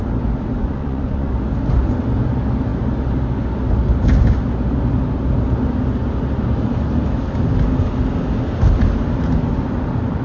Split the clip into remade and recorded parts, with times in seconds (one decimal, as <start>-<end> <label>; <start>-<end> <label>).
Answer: 0.0-0.6 recorded; 0.6-1.3 remade; 1.3-10.2 recorded